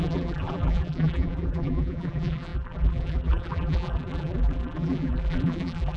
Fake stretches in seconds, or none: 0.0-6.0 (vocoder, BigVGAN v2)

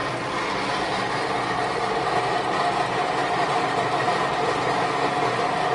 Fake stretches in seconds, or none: 3.2-5.1 (vocoder, BigVGAN v2)

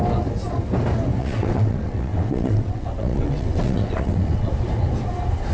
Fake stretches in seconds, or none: 1.2-4.5 (vocoder, WaveNeXt)